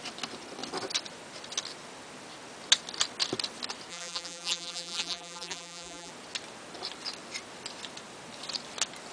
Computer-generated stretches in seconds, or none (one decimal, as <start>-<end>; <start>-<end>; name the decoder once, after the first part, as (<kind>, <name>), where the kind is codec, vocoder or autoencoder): 3.9-6.1 (vocoder, BigVGAN v2)